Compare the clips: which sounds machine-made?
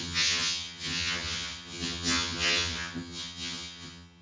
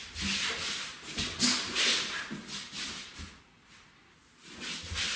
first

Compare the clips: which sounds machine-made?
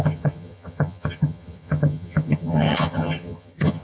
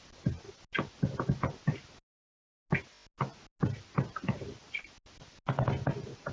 first